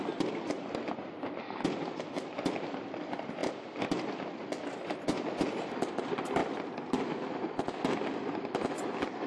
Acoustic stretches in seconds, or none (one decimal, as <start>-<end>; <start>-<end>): 6.4-9.3